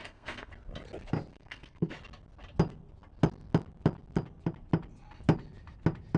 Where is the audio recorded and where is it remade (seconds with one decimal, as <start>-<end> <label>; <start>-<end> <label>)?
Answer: 0.0-0.5 remade; 0.5-1.3 recorded; 1.3-1.9 remade; 1.9-6.2 recorded